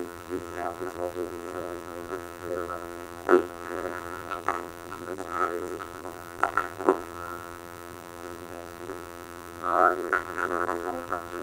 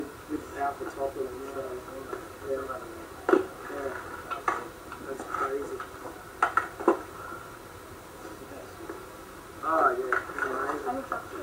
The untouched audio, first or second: second